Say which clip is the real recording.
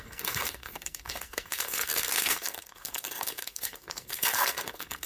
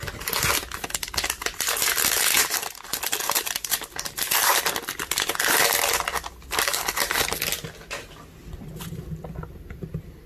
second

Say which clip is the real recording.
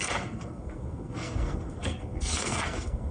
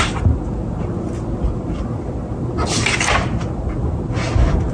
second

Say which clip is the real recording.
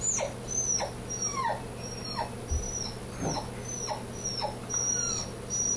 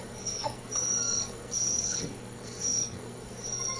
first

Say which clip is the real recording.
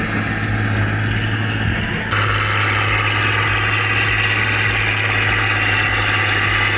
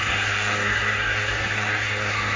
first